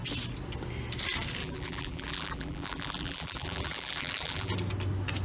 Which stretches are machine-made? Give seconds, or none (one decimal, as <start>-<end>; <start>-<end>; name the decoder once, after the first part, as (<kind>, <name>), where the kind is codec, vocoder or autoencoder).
1.4-4.5 (vocoder, BigVGAN v2)